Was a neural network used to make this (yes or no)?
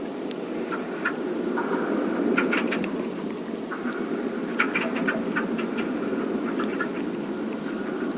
no